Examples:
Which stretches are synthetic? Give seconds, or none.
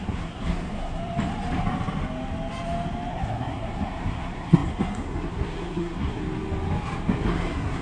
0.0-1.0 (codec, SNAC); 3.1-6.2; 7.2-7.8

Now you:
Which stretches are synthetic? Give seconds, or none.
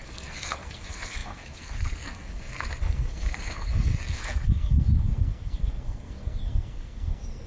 0.0-7.5 (codec, SNAC)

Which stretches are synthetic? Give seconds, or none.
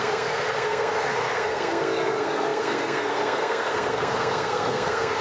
0.0-5.2 (codec, SNAC)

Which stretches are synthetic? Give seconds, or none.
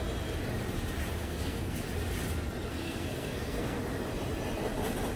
1.2-1.8 (codec, SNAC); 2.7-3.8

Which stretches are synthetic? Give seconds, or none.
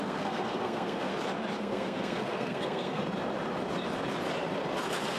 0.0-1.1 (codec, SNAC); 1.6-3.0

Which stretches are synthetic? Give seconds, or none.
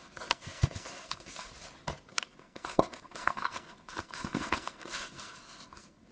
0.0-1.5 (codec, SNAC); 2.1-6.1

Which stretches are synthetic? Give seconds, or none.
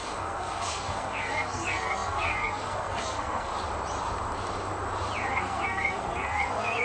0.0-3.5 (codec, SNAC); 5.3-6.8